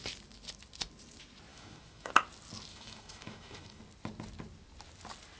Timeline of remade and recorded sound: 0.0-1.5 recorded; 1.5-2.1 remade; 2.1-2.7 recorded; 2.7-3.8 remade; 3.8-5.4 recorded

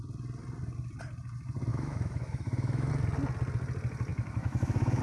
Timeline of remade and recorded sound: 0.0-1.7 recorded; 1.7-2.9 remade; 2.9-4.1 recorded; 4.1-5.0 remade

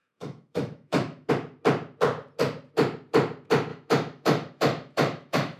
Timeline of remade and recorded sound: 0.0-1.3 remade; 1.3-3.7 recorded; 3.7-5.6 remade

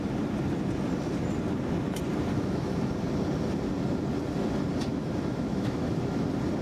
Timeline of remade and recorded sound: 0.0-2.3 recorded; 2.3-2.9 remade; 2.9-4.9 recorded; 4.9-6.0 remade; 6.0-6.6 recorded

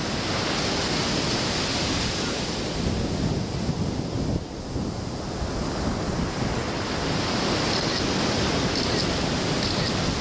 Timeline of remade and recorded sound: 0.0-10.2 recorded

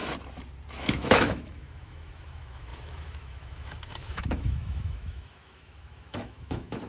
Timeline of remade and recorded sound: 0.0-0.7 recorded; 0.7-6.9 remade

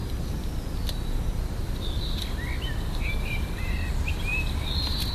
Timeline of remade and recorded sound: 0.0-5.1 recorded